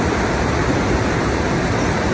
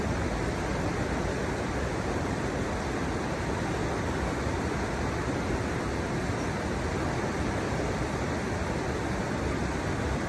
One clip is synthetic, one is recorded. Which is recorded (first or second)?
second